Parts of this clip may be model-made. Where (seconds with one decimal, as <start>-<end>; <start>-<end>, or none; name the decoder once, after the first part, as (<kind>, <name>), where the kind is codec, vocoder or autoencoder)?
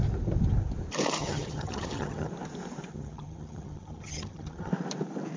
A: 1.2-2.3 (vocoder, HiFi-GAN); 2.9-4.7